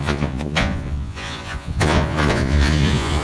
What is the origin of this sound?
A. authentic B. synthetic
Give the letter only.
B